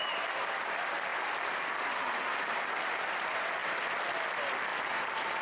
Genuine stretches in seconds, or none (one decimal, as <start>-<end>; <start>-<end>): 0.0-5.4